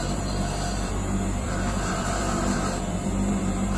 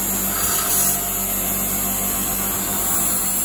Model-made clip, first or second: first